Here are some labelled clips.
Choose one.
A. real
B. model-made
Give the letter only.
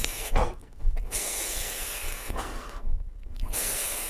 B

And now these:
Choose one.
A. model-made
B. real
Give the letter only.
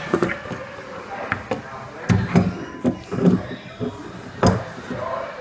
B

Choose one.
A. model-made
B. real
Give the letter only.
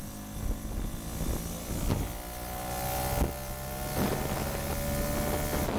B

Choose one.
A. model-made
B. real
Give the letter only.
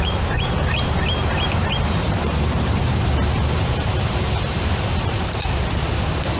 A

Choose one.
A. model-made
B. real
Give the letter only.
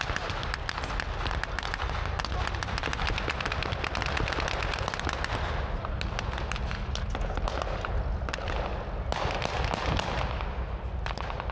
B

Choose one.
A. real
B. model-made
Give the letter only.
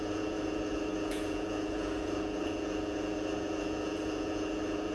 B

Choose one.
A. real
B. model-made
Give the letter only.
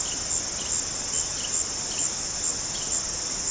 A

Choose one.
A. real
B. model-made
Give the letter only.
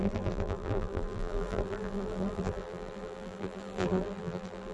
B